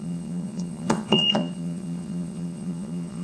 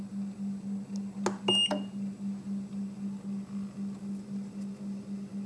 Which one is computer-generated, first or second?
first